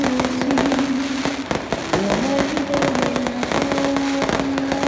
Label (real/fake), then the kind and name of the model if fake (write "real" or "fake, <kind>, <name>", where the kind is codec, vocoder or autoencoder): real